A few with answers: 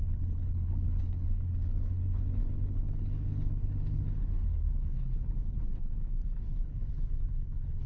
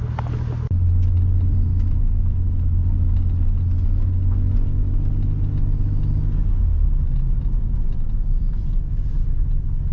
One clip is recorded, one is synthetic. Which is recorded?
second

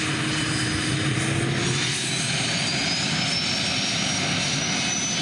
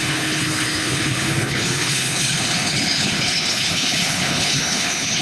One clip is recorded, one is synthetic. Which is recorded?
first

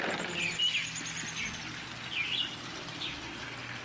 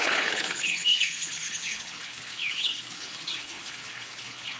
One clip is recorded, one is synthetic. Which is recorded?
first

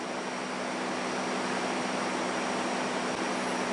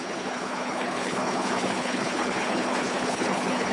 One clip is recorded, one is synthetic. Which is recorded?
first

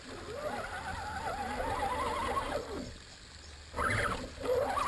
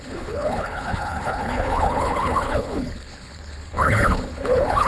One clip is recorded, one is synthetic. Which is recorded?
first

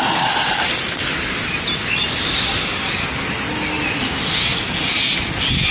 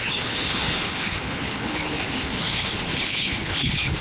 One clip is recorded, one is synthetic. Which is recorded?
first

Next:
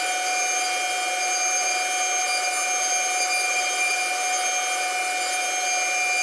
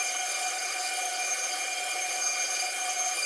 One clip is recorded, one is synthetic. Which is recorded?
first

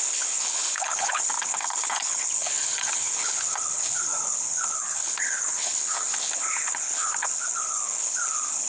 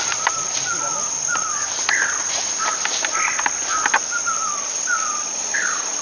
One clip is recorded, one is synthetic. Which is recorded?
second